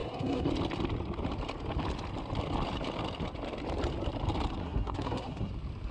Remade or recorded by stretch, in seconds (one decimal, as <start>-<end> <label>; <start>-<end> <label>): 0.0-0.5 remade; 0.5-4.6 recorded; 4.6-5.5 remade; 5.5-5.9 recorded